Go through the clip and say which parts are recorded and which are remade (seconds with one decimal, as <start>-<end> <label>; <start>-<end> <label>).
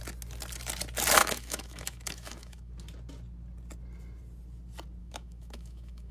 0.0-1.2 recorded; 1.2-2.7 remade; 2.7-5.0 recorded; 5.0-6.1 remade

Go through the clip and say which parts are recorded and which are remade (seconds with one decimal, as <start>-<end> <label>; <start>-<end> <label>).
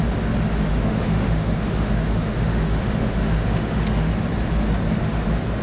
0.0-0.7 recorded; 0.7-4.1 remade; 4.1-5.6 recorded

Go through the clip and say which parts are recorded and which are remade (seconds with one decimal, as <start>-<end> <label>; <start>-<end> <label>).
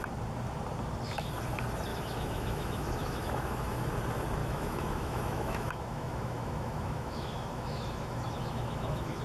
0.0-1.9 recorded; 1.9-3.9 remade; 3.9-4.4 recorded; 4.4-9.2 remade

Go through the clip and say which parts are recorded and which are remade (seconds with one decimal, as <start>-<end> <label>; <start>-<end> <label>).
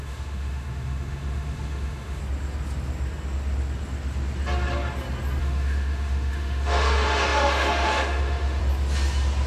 0.0-2.2 remade; 2.2-5.4 recorded; 5.4-8.6 remade; 8.6-9.5 recorded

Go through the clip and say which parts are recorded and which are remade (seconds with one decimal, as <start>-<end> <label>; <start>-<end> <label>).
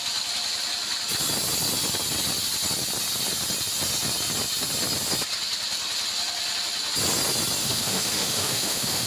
0.0-7.6 recorded; 7.6-9.1 remade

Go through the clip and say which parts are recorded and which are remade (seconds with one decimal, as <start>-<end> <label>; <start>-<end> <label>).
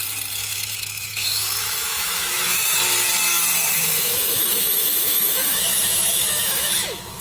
0.0-0.4 recorded; 0.4-2.8 remade; 2.8-3.6 recorded; 3.6-7.2 remade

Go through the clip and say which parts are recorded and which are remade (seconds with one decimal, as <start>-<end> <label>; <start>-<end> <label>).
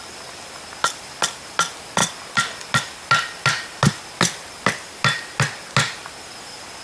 0.0-6.8 recorded